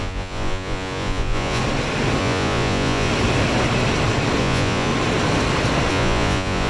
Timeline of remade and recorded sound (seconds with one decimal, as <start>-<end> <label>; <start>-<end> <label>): 0.0-1.6 remade; 1.6-2.2 recorded; 2.2-3.1 remade; 3.1-4.4 recorded; 4.4-4.9 remade; 4.9-5.9 recorded; 5.9-6.7 remade